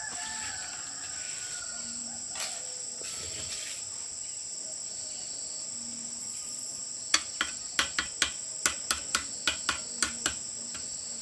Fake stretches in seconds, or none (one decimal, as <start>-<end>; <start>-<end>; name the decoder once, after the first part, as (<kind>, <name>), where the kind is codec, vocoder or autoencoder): 6.2-6.8 (vocoder, Vocos)